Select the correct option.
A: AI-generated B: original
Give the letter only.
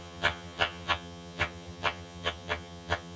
A